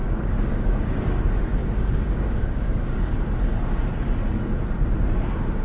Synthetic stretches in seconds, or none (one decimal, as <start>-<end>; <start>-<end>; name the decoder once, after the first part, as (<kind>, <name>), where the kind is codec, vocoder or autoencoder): 0.0-1.2 (codec, DAC); 1.6-3.2